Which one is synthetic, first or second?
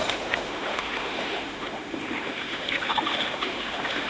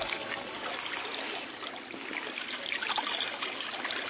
first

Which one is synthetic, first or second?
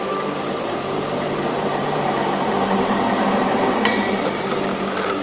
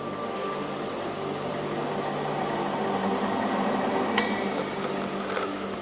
first